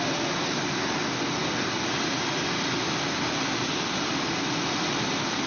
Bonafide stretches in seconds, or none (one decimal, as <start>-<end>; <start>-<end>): 0.0-5.5